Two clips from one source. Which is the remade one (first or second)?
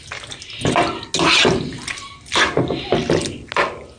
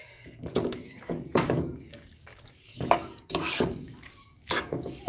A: second